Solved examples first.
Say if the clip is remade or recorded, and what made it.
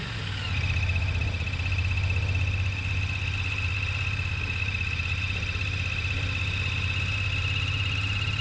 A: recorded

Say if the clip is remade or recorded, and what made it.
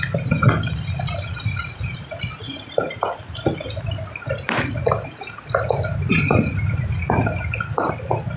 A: recorded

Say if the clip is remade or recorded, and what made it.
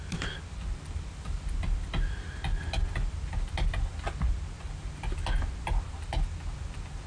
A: recorded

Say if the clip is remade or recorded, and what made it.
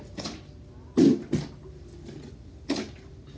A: recorded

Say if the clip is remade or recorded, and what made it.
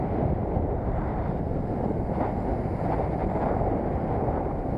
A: recorded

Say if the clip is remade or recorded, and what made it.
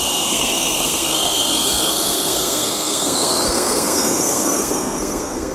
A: remade, codec, SNAC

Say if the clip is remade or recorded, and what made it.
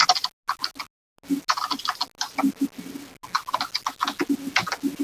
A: recorded